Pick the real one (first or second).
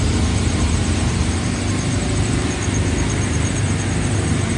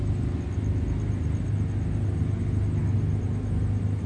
second